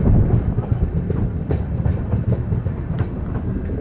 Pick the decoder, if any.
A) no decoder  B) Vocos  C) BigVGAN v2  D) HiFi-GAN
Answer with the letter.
A